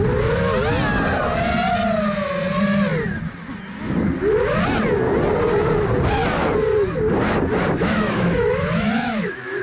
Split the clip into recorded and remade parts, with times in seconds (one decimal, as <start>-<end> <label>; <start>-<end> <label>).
0.0-7.8 recorded; 7.8-9.6 remade